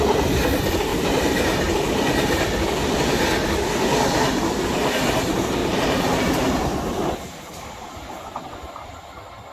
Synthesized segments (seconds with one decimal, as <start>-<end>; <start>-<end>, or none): 0.9-3.0; 5.6-9.1